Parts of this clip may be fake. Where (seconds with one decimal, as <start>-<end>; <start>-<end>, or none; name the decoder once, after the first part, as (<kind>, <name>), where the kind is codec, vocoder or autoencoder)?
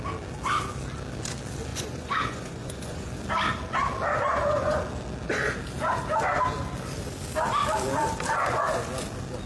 1.7-3.1 (vocoder, Vocos); 4.3-4.8